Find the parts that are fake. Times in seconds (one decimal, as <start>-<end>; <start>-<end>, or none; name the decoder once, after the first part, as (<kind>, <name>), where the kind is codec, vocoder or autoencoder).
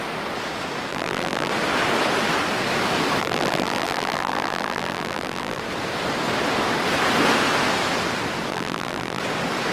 0.9-1.5 (vocoder, BigVGAN v2); 3.2-5.6; 8.5-9.2